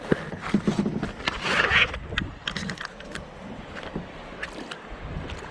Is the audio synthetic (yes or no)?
no